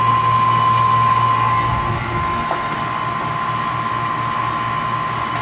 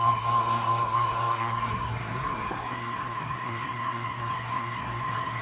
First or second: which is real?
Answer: first